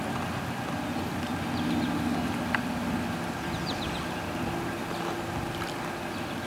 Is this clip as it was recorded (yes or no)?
yes